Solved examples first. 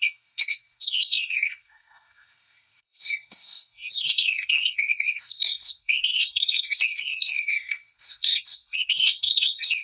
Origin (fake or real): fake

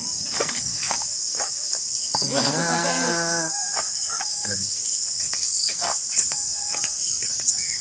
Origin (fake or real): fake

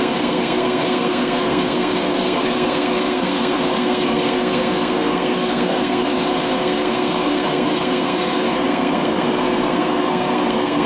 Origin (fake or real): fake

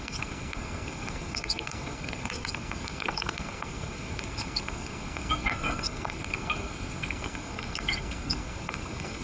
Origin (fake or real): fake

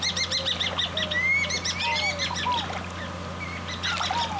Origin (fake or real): real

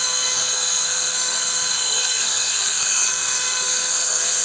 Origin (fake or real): fake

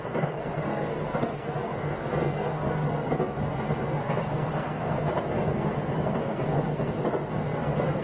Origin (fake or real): fake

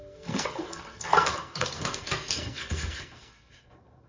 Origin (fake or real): fake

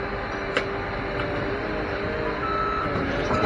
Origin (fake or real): real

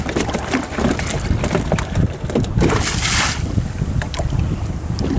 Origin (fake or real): real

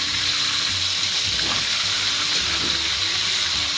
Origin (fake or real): real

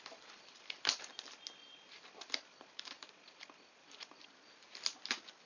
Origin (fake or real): real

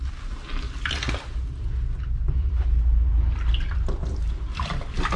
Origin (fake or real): real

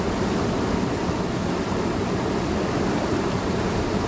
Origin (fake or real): real